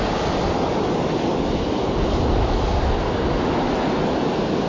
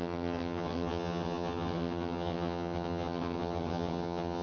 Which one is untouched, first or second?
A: first